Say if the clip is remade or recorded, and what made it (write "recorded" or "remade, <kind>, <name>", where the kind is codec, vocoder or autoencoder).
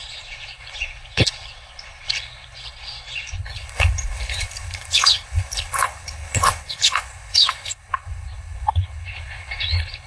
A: remade, codec, HILCodec